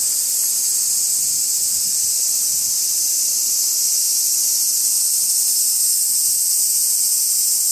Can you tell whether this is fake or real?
real